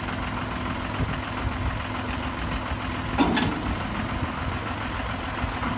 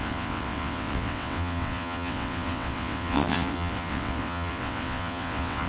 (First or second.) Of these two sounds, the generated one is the second